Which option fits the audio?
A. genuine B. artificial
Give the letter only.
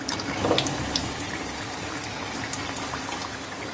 A